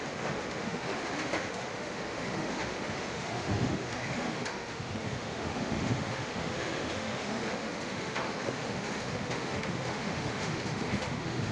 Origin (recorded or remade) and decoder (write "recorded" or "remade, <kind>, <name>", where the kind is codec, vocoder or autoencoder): remade, autoencoder, DAC-VAE